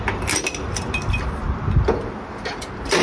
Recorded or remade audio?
recorded